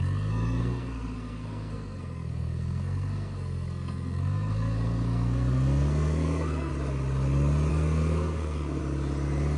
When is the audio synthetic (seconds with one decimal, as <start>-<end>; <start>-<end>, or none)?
0.0-6.7; 7.7-8.8